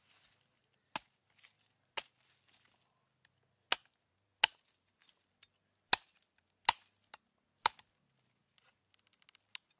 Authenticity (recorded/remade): recorded